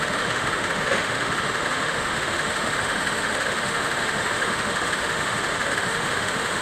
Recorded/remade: remade